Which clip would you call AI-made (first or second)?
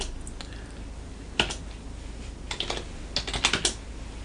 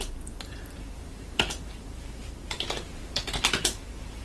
second